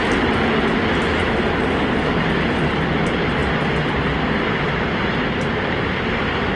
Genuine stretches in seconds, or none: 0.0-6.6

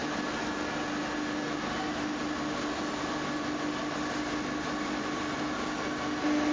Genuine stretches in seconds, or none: 0.0-6.5

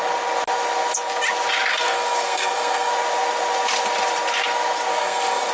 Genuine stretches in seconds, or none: 0.0-1.7; 2.9-4.9

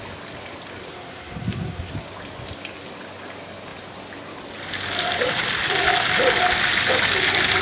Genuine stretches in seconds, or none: 0.0-0.9; 1.9-7.6